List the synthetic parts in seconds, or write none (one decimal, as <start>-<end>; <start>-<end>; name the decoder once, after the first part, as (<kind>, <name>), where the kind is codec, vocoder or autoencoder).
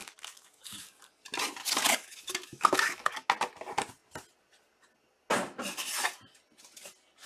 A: 0.0-1.0 (codec, DAC); 1.6-3.3